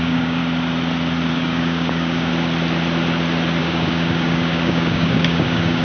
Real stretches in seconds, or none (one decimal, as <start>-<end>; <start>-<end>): 0.4-1.3; 2.3-3.6